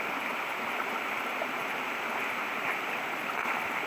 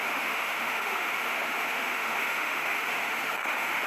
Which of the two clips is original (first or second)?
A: first